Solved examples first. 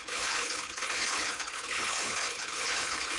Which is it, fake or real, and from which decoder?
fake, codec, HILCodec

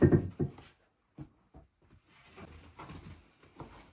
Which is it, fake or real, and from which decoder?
real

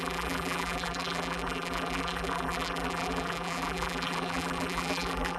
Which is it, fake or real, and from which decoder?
fake, vocoder, BigVGAN v2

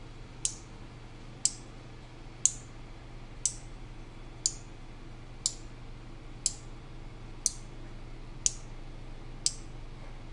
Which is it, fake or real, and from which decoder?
real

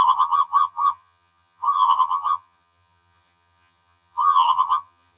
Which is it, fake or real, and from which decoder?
fake, vocoder, HiFi-GAN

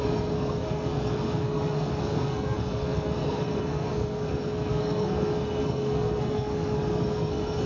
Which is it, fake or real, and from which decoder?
fake, codec, SNAC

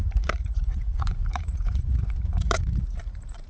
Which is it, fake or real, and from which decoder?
fake, vocoder, Vocos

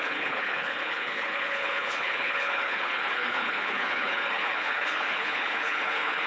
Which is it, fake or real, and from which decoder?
fake, codec, HILCodec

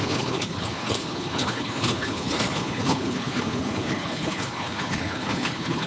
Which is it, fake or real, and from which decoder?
fake, codec, HILCodec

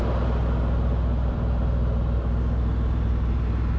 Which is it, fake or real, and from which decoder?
real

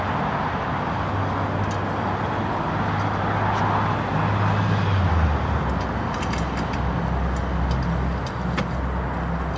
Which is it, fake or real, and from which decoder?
real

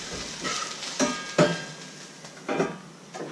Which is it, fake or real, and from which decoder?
real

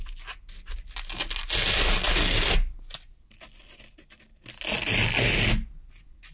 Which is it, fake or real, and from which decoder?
real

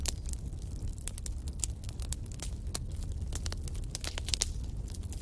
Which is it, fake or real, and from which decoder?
real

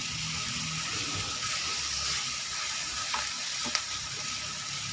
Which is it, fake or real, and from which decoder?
real